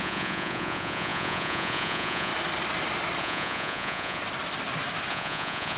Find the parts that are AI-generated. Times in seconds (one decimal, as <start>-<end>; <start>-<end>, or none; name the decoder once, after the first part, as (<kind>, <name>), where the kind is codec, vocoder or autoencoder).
0.0-2.3 (vocoder, Vocos); 3.2-4.2; 5.1-5.8